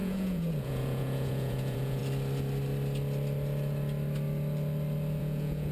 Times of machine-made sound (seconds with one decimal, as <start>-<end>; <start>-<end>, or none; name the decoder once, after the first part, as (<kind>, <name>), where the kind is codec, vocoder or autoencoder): 0.0-2.0 (vocoder, Vocos); 5.2-5.7